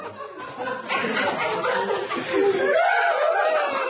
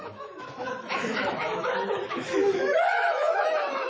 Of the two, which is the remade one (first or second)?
second